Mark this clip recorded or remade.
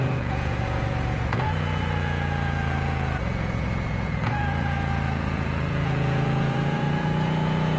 remade